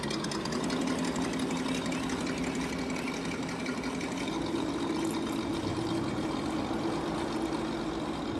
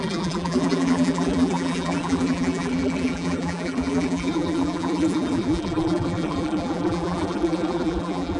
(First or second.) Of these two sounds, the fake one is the second